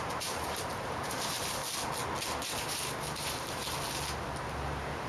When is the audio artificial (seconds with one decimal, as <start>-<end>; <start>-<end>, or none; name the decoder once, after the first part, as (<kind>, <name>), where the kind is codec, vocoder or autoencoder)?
0.0-1.6 (vocoder, BigVGAN v2); 2.6-3.6; 4.2-5.1